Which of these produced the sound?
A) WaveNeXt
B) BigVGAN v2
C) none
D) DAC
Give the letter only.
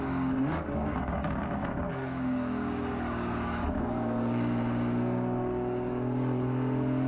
D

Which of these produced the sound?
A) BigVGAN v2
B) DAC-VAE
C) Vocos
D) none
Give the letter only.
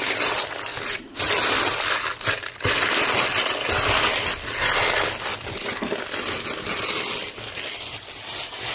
D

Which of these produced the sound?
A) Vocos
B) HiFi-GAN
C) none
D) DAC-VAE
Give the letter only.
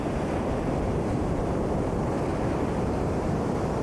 C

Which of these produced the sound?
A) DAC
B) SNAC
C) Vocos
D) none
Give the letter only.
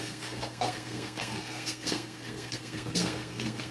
B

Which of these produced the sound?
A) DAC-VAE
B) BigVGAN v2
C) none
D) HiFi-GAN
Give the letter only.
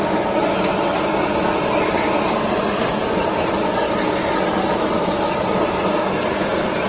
C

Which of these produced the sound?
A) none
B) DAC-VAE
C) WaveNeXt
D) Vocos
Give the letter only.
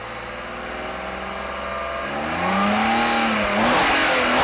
A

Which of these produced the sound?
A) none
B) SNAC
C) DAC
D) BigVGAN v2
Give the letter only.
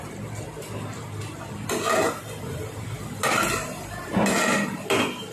A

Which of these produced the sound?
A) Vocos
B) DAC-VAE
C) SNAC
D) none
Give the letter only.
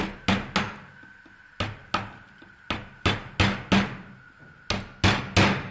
D